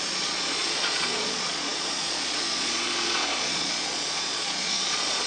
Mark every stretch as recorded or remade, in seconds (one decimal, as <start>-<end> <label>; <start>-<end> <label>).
0.0-5.3 remade